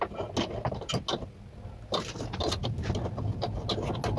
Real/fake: real